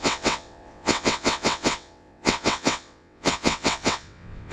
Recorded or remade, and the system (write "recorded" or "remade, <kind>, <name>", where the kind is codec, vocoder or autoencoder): remade, vocoder, WaveNeXt